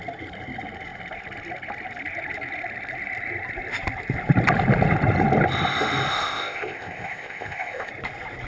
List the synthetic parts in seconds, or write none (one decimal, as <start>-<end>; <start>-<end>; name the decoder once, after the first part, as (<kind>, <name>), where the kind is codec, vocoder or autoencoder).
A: 6.1-7.9 (codec, ZipCodec)

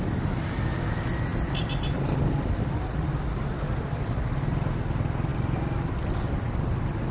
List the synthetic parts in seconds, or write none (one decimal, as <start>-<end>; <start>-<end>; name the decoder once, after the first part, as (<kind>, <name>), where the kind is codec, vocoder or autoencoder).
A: none

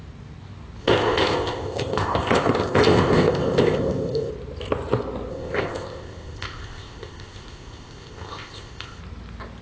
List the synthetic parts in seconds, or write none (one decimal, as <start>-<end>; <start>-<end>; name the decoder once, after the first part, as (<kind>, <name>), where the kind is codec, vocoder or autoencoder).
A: 0.8-4.3 (codec, ZipCodec); 5.3-9.0

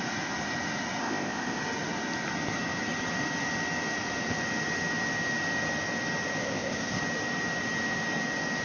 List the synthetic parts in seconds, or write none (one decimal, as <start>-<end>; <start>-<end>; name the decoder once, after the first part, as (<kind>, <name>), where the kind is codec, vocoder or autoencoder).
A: 1.0-1.6 (codec, ZipCodec); 6.4-7.0

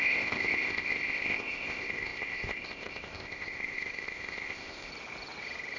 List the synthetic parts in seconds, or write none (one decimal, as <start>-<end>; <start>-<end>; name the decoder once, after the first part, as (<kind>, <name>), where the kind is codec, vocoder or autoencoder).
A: 0.0-4.9 (codec, ZipCodec)

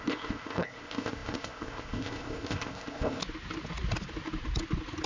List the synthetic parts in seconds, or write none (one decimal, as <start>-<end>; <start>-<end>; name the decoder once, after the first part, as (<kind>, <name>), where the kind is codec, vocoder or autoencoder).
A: 0.0-3.2 (codec, ZipCodec)